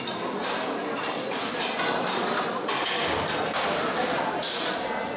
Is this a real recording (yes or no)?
yes